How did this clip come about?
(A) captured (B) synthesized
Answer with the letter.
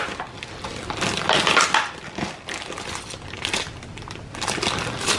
A